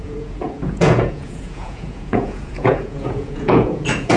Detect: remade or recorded remade